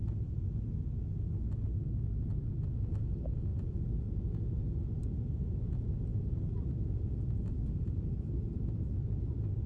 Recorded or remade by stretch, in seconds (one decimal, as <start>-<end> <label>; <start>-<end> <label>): 0.0-3.5 recorded; 3.5-4.8 remade; 4.8-6.1 recorded; 6.1-8.9 remade; 8.9-9.7 recorded